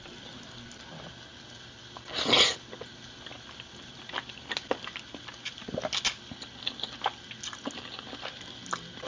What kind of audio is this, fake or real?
real